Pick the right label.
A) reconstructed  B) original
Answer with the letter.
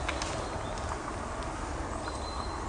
B